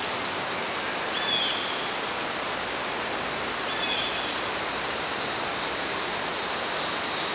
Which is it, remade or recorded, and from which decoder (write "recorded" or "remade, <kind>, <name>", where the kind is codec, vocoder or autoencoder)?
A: recorded